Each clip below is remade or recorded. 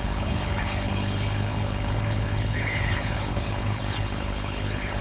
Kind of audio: remade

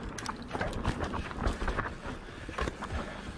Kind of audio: recorded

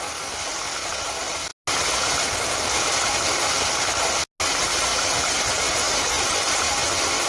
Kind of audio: recorded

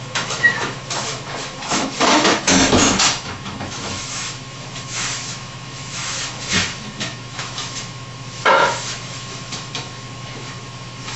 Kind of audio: remade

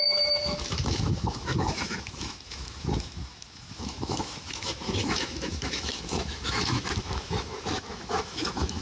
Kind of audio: remade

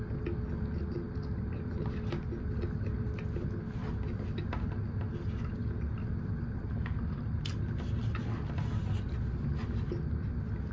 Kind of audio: recorded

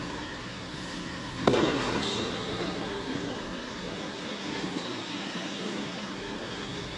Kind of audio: remade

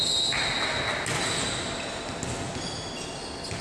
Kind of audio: recorded